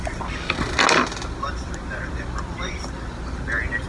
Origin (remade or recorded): recorded